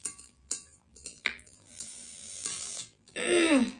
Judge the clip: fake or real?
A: fake